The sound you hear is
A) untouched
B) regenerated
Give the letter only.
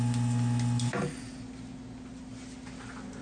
A